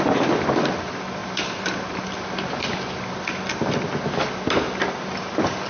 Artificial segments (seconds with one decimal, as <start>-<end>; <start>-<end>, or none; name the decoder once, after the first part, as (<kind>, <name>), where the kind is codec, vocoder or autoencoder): none